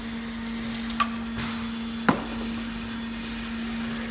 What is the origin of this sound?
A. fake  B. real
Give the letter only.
B